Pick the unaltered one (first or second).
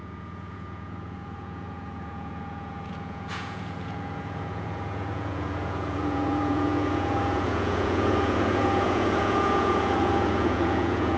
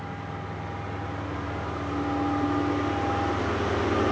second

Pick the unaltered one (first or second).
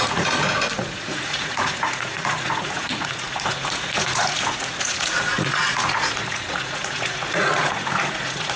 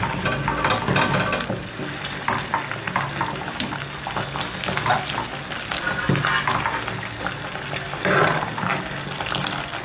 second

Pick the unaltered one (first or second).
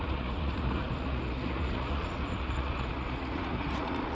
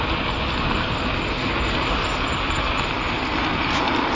second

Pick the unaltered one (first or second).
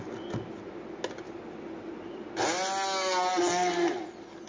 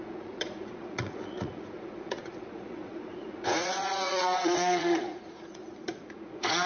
first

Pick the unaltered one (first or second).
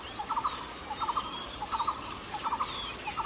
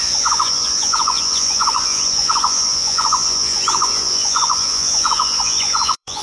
first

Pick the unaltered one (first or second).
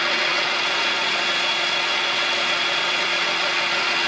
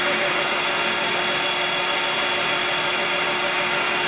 second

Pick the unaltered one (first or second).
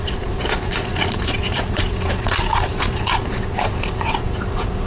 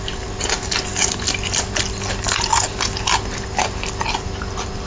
second